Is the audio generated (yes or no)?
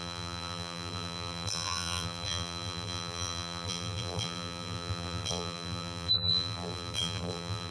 yes